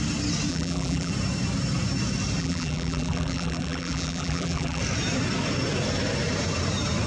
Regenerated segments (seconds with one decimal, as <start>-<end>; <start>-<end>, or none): 0.5-1.1; 2.4-4.8